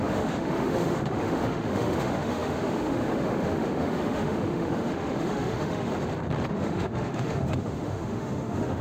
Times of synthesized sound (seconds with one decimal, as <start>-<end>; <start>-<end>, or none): 0.0-5.9; 6.5-8.8

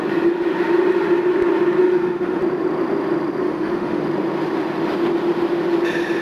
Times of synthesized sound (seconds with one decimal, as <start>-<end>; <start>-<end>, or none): 1.8-2.4; 3.4-4.0

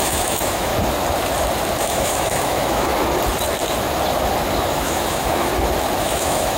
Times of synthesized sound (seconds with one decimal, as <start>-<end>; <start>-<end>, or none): 0.0-0.7; 1.8-2.9; 4.7-5.5; 6.0-6.6